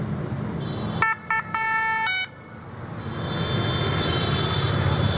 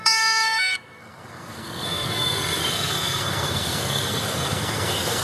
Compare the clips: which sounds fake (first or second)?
second